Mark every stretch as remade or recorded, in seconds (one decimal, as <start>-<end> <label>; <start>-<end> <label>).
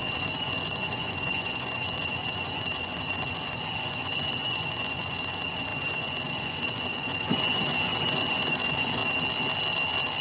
0.0-9.0 remade; 9.0-10.2 recorded